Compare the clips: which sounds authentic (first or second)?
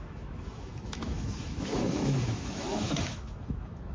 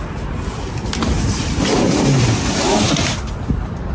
second